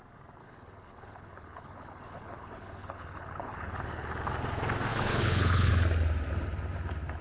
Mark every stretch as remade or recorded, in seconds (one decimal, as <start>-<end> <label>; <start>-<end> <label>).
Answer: 0.0-0.4 recorded; 0.4-4.1 remade; 4.1-4.9 recorded; 4.9-5.7 remade; 5.7-7.2 recorded